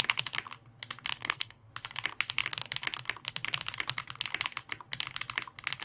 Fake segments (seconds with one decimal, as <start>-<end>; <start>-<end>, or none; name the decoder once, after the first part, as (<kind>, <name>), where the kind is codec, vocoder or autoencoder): 1.2-1.7 (codec, SNAC)